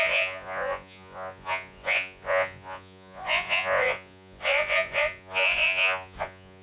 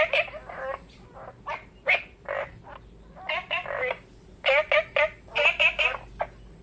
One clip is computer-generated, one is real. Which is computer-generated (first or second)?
first